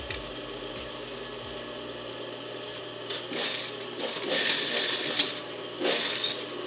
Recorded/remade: recorded